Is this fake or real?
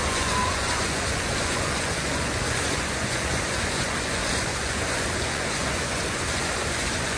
fake